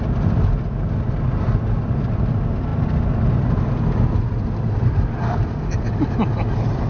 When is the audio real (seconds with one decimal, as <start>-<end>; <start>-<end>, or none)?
0.0-6.9

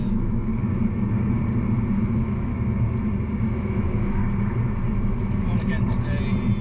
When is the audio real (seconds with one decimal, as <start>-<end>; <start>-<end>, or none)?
0.5-1.9; 2.5-3.4; 4.2-5.0; 5.7-6.6

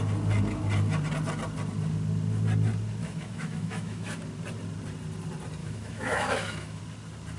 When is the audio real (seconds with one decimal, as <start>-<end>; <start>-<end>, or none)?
0.0-3.0; 4.2-5.6; 6.8-7.4

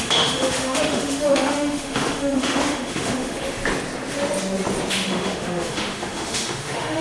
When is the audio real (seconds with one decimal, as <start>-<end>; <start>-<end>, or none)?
3.6-4.9